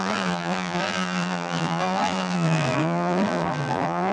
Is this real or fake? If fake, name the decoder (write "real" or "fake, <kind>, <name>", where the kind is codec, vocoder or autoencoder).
fake, vocoder, BigVGAN v2